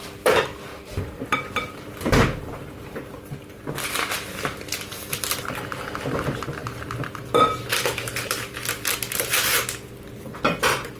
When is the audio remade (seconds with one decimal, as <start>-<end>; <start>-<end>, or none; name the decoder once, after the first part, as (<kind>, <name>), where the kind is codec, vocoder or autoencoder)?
0.7-1.3 (vocoder, BigVGAN v2)